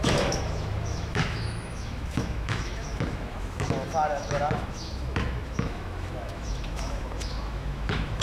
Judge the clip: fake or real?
fake